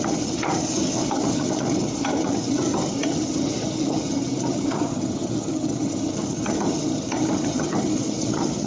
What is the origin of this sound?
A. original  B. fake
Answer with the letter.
B